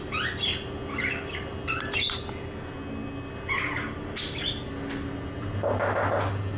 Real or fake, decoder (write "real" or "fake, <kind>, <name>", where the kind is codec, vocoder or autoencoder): real